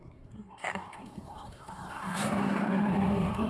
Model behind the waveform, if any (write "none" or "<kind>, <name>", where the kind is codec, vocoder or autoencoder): codec, SNAC